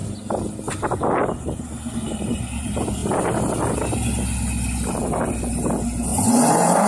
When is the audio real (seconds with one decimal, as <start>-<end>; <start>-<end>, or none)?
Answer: 0.0-6.1